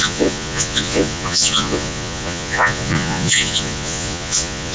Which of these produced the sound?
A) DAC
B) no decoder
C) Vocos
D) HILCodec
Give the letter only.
C